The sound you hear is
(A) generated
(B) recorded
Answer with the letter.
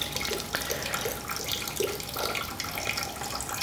B